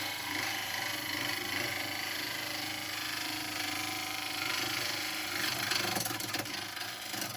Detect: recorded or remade remade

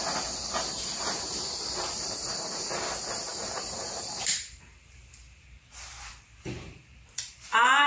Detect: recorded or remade remade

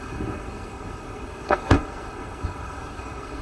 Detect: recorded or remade remade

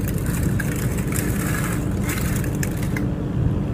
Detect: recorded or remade recorded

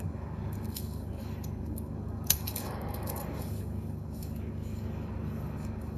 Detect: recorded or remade remade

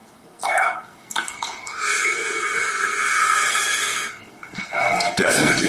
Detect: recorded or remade remade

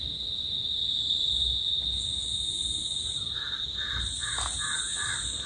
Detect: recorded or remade recorded